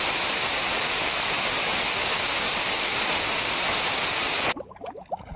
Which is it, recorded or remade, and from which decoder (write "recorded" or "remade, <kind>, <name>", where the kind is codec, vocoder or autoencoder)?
recorded